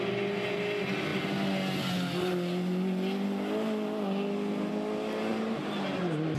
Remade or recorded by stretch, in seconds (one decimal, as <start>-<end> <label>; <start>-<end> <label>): 0.0-5.3 recorded; 5.3-6.0 remade; 6.0-6.4 recorded